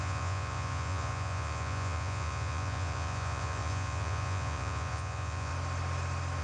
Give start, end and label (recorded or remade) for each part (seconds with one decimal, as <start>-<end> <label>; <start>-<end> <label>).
0.0-5.5 remade; 5.5-6.4 recorded

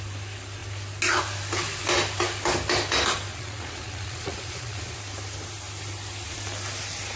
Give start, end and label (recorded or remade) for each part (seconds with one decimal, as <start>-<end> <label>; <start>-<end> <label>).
0.0-3.3 recorded; 3.3-5.0 remade; 5.0-7.2 recorded

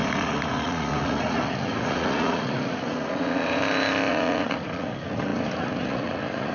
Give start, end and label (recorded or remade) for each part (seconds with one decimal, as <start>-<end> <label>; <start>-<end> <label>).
0.0-3.6 remade; 3.6-4.1 recorded; 4.1-6.5 remade

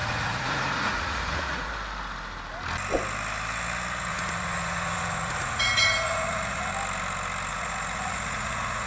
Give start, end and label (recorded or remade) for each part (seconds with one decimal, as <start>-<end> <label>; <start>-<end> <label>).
0.0-1.7 remade; 1.7-4.1 recorded; 4.1-6.7 remade; 6.7-7.5 recorded; 7.5-8.9 remade

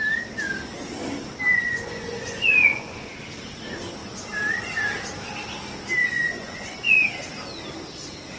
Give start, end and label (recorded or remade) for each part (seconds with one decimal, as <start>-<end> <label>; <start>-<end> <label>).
0.0-1.5 recorded; 1.5-3.1 remade; 3.1-6.0 recorded; 6.0-7.1 remade; 7.1-8.4 recorded

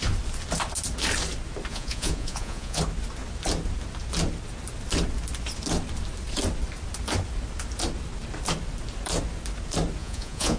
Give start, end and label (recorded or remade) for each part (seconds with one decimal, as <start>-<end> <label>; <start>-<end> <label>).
0.0-1.7 recorded; 1.7-2.8 remade; 2.8-10.0 recorded; 10.0-10.6 remade

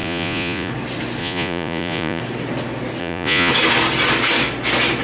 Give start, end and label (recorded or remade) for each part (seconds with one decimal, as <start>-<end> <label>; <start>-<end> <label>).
0.0-0.7 remade; 0.7-1.2 recorded; 1.2-2.2 remade; 2.2-3.0 recorded; 3.0-3.5 remade; 3.5-5.0 recorded